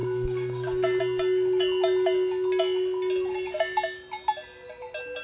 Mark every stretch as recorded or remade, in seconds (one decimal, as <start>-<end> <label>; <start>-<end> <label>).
0.0-1.0 remade; 1.0-5.2 recorded